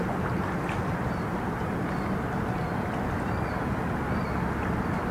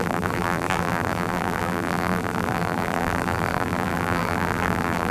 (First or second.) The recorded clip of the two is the first